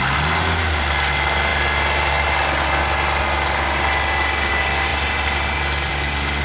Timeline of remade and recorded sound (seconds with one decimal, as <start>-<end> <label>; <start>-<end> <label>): 0.0-6.4 recorded